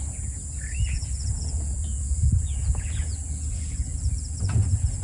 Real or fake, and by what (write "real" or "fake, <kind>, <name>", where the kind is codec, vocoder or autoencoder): fake, vocoder, Vocos